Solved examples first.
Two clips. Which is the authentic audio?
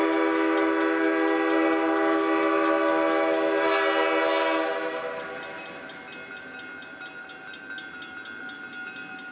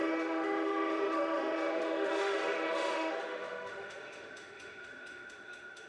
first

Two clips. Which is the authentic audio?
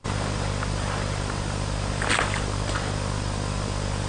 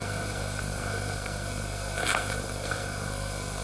first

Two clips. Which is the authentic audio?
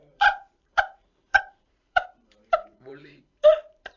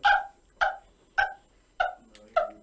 second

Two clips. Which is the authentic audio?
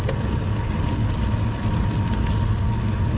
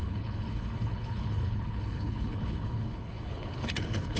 first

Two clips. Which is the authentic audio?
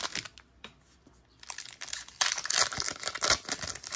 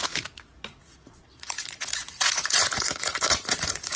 first